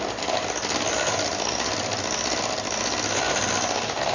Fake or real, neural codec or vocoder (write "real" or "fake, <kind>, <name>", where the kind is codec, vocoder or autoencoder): real